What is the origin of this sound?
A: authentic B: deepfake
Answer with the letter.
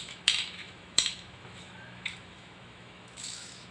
B